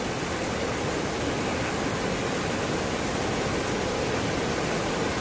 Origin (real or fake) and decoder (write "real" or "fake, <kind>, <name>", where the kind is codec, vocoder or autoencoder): real